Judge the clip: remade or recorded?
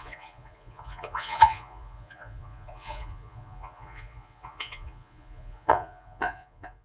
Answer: remade